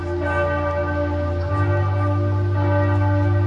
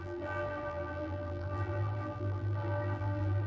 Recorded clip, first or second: first